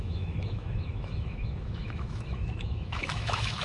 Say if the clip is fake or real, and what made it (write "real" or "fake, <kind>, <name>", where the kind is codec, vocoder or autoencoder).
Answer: fake, autoencoder, DAC-VAE